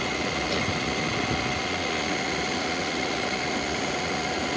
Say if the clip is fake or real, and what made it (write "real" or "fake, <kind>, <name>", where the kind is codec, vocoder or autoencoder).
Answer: fake, vocoder, Vocos